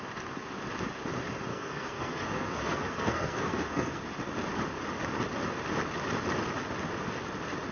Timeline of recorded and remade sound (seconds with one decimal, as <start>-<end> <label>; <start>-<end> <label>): 0.0-1.5 recorded; 1.5-4.0 remade; 4.0-7.7 recorded